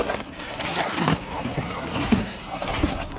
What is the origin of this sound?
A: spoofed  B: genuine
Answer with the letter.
A